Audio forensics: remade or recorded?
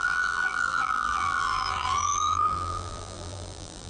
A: remade